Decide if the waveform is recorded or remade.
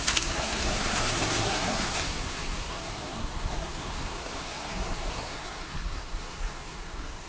remade